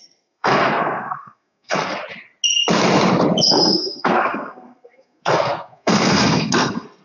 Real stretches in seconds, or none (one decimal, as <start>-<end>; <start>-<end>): 2.0-3.6